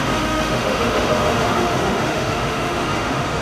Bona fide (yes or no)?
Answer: no